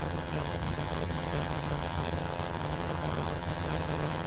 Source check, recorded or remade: remade